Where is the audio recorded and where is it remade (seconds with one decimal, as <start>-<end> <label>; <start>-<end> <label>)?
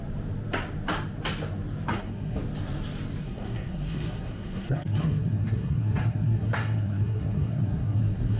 0.0-1.9 recorded; 1.9-2.4 remade; 2.4-3.2 recorded; 3.2-8.4 remade